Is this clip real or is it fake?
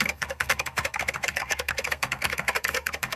fake